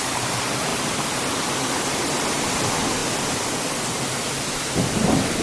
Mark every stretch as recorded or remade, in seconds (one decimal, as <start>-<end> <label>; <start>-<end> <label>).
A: 0.0-5.4 recorded